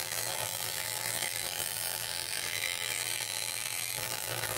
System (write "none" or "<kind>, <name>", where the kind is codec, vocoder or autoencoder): vocoder, BigVGAN v2